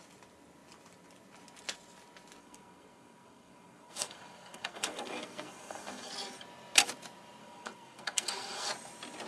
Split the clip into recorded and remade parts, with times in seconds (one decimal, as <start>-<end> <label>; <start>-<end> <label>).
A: 0.0-2.4 recorded; 2.4-6.1 remade; 6.1-7.4 recorded; 7.4-8.7 remade; 8.7-9.3 recorded